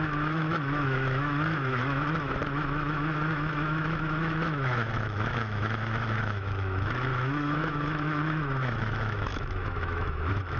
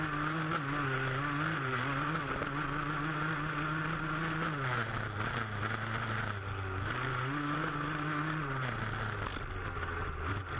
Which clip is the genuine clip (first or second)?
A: second